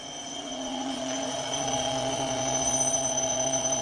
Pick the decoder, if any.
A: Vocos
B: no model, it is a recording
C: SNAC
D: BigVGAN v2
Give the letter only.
A